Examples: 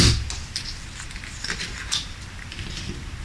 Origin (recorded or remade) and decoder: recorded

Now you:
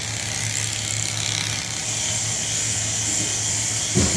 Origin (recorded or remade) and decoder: recorded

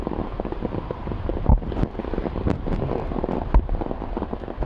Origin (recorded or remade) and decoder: recorded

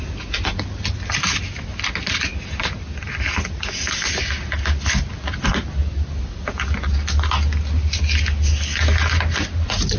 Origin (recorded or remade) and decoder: recorded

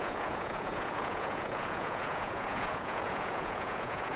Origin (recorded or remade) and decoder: remade, vocoder, Vocos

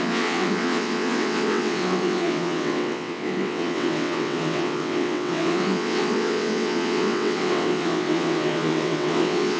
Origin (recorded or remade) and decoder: remade, vocoder, WaveNeXt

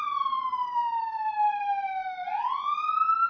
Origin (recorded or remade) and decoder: recorded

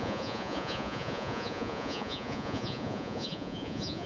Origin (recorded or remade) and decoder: remade, vocoder, Vocos